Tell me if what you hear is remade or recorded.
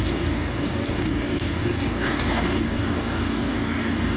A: remade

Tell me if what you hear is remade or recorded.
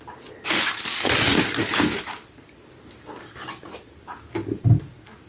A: recorded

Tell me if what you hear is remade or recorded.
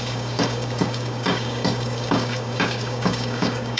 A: remade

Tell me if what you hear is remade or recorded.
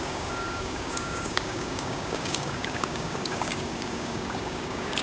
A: remade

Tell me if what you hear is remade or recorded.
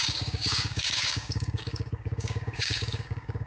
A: remade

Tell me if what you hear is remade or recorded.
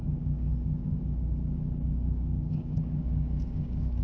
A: remade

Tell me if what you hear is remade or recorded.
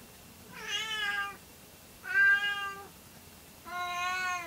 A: recorded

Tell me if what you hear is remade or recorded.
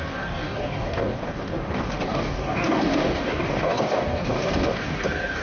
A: remade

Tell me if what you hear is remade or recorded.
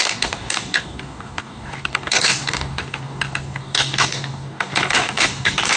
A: remade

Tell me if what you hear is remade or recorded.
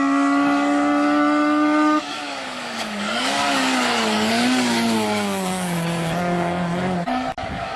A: remade